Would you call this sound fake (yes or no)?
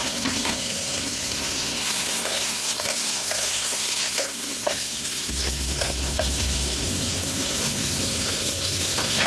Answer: yes